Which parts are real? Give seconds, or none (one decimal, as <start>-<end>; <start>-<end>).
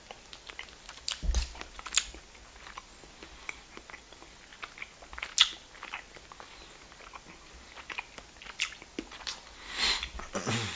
0.0-10.8